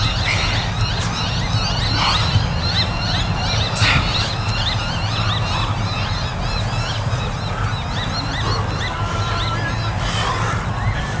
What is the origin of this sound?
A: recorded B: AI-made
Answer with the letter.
A